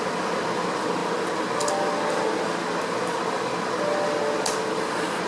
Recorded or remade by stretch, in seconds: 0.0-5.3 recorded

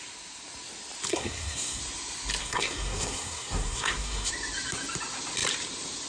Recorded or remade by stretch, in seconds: 0.0-1.1 recorded; 1.1-1.8 remade; 1.8-2.4 recorded; 2.4-4.3 remade; 4.3-6.1 recorded

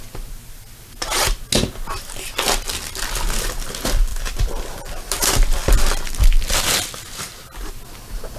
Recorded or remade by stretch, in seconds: 0.0-4.1 recorded; 4.1-7.7 remade; 7.7-8.4 recorded

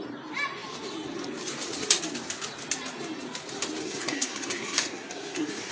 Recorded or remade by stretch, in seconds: 0.0-3.8 recorded; 3.8-5.7 remade

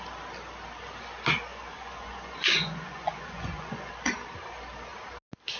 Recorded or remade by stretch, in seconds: 0.0-1.5 recorded; 1.5-3.9 remade; 3.9-5.6 recorded

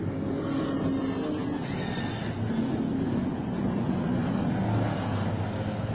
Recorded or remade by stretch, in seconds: 0.0-3.2 recorded; 3.2-4.5 remade; 4.5-5.9 recorded

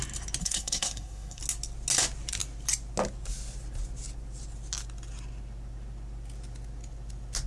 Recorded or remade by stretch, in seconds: 0.0-0.4 recorded; 0.4-1.4 remade; 1.4-7.5 recorded